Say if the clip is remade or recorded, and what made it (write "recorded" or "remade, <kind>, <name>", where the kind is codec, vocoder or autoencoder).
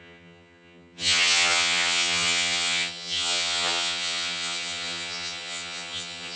remade, vocoder, HiFi-GAN